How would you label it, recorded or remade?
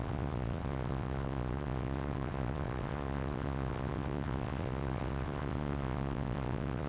remade